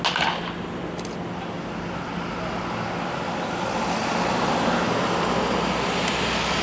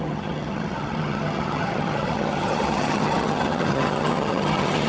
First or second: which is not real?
second